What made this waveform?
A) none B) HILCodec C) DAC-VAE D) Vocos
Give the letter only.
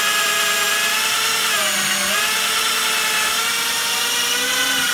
A